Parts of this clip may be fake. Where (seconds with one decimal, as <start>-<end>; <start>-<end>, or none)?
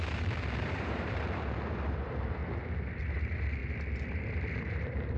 0.0-2.4; 3.0-3.6; 4.6-5.2